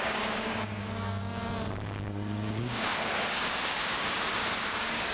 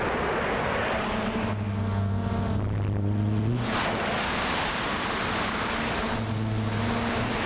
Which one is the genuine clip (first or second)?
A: second